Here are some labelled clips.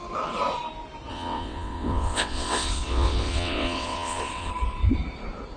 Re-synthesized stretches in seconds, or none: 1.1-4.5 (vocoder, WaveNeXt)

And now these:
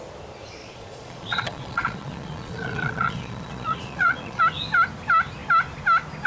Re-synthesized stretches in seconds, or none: 0.6-4.4 (vocoder, Vocos)

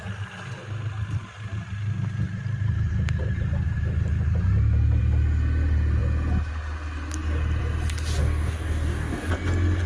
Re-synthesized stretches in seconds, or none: 8.2-9.3 (codec, DAC)

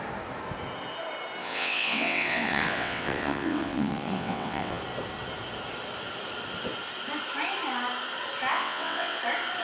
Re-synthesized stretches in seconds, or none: 1.4-4.8 (vocoder, WaveNeXt); 8.5-9.2

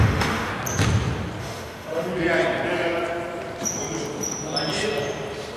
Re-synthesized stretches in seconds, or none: 0.0-0.5 (autoencoder, DAC-VAE); 1.4-2.1

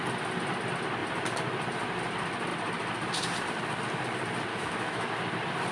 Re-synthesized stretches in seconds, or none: 4.5-5.1 (autoencoder, DAC-VAE)

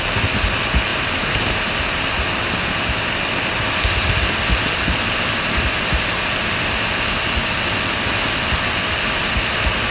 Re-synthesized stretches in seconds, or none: 0.9-1.8 (vocoder, BigVGAN v2)

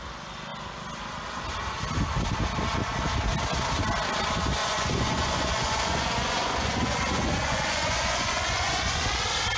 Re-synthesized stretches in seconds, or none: 4.6-9.2 (vocoder, Vocos)